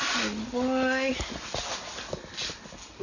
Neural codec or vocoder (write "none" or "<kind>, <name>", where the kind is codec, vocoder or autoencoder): none